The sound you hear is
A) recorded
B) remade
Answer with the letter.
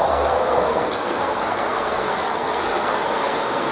B